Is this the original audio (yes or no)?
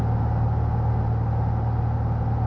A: yes